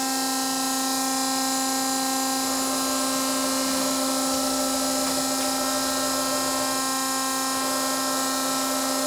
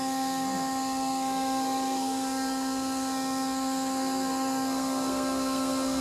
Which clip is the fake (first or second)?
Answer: second